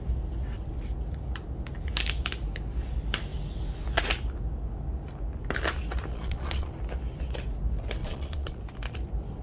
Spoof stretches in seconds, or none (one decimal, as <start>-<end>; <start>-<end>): 6.1-6.7; 8.0-8.6